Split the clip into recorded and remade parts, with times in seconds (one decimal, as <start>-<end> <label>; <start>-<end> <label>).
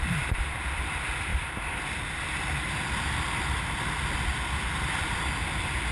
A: 0.0-5.9 recorded